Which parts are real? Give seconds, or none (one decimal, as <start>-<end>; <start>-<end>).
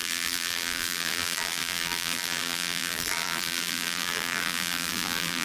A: none